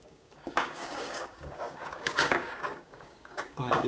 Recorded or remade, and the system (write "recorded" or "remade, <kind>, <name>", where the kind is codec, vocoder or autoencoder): remade, codec, DAC